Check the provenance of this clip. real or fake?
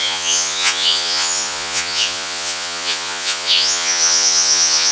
fake